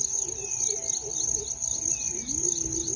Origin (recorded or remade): recorded